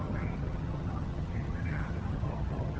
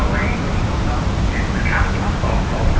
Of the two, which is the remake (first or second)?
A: first